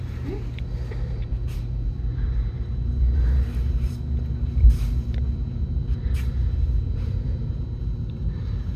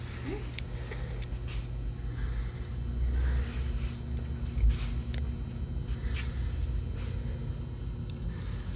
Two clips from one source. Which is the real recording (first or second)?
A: second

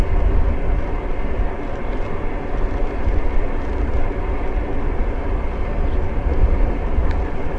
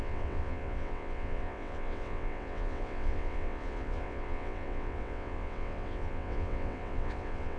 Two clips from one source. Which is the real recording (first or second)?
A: first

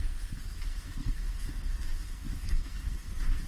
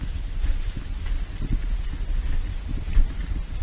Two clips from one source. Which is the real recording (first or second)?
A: second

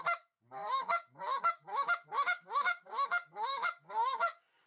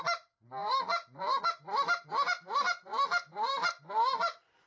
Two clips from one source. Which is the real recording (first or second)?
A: second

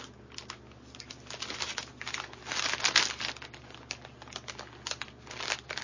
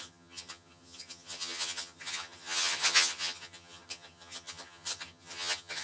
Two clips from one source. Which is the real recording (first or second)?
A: first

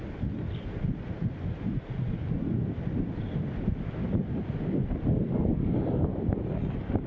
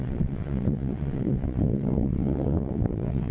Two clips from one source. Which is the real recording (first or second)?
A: first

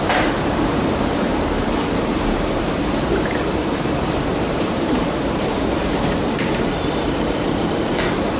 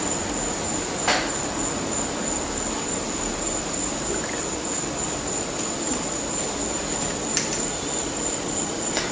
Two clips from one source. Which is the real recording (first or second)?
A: second